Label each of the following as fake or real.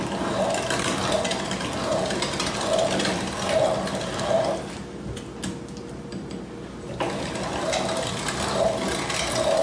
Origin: real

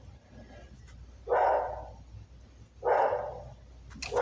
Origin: real